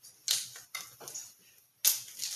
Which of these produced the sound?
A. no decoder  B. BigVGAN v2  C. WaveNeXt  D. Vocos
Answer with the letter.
A